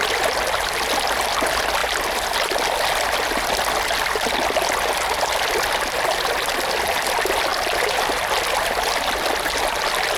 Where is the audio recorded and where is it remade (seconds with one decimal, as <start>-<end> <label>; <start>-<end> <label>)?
0.0-10.2 recorded